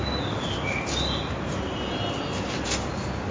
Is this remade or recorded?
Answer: recorded